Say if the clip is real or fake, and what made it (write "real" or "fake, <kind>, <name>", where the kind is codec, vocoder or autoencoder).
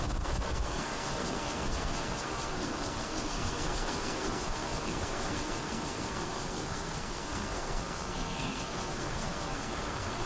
fake, codec, SNAC